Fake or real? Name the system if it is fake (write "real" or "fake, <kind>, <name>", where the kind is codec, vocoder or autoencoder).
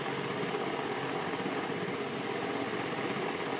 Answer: real